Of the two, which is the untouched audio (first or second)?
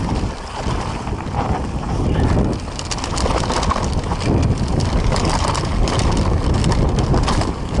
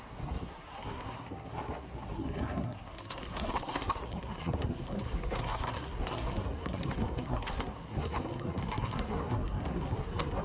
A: first